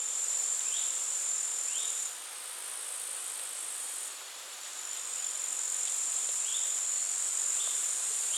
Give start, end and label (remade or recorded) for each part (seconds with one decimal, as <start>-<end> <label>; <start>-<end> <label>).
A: 0.0-1.5 remade; 1.5-3.8 recorded; 3.8-4.7 remade; 4.7-6.0 recorded; 6.0-6.5 remade; 6.5-7.6 recorded; 7.6-8.4 remade